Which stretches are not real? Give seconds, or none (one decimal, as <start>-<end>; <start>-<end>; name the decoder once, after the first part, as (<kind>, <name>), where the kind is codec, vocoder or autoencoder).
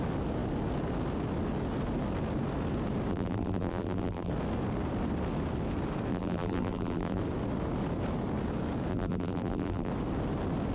3.1-4.3 (vocoder, BigVGAN v2); 6.1-7.2; 8.9-9.9